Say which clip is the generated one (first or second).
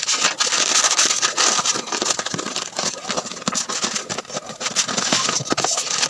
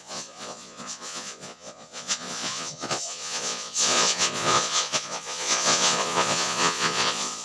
second